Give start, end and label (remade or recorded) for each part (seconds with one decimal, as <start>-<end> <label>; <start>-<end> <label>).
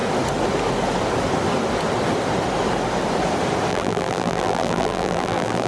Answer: 0.0-3.7 recorded; 3.7-5.7 remade